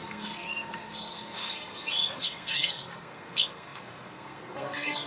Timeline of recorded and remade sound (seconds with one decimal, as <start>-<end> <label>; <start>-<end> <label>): 0.0-5.1 remade